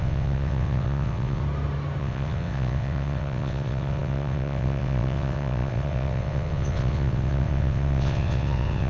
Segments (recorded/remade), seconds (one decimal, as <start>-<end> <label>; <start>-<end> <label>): 0.0-1.4 remade; 1.4-2.0 recorded; 2.0-8.9 remade